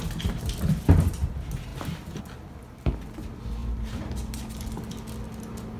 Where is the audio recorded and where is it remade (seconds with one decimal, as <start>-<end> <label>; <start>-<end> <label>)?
0.0-3.6 recorded; 3.6-4.4 remade; 4.4-5.8 recorded